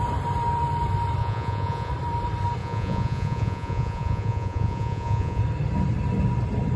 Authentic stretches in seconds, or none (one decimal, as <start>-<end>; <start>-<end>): 0.0-1.2; 1.9-2.6; 5.4-6.8